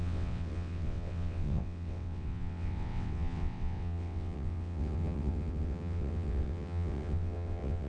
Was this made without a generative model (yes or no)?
no